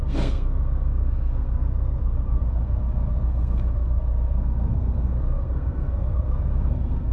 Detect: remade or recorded remade